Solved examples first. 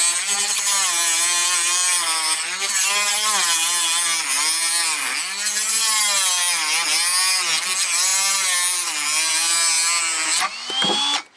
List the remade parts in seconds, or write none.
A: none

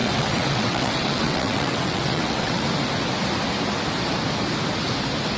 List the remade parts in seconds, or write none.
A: 0.0-2.6 (vocoder, WaveNeXt)

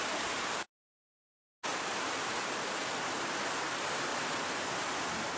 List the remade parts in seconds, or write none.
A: 0.0-1.0 (vocoder, BigVGAN v2); 1.7-2.8; 4.1-4.9

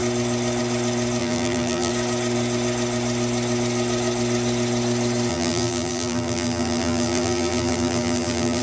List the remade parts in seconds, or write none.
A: 1.2-1.9 (vocoder, BigVGAN v2); 5.3-8.6

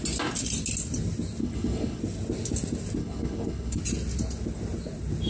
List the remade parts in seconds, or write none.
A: 1.4-2.0 (codec, HILCodec); 3.0-3.8

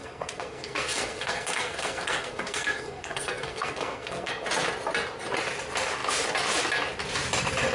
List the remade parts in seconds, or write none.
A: 0.0-4.3 (codec, SNAC)

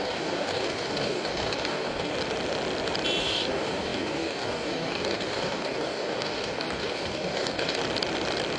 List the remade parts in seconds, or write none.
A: 0.0-2.1 (codec, DAC); 3.2-7.8